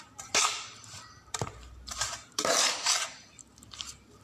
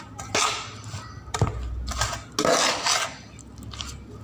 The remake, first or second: first